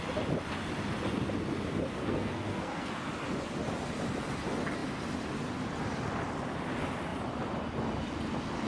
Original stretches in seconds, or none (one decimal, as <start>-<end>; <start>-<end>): 0.0-2.0; 2.9-8.7